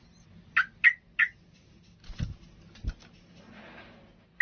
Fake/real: real